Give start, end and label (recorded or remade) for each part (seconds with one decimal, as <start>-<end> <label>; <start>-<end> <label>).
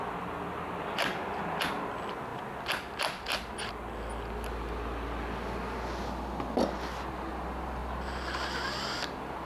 0.0-9.5 recorded